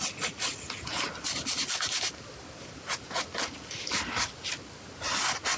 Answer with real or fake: real